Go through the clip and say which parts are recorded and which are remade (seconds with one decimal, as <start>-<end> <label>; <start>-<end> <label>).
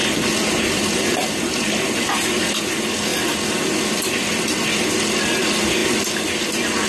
0.0-1.4 remade; 1.4-3.1 recorded; 3.1-3.8 remade; 3.8-6.9 recorded